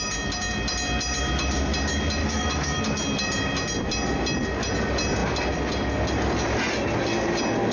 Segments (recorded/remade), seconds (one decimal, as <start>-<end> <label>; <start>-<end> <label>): 0.0-2.2 recorded; 2.2-2.8 remade; 2.8-7.7 recorded